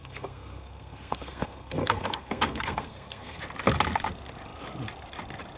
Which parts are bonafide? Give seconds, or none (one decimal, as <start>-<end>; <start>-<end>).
3.4-5.6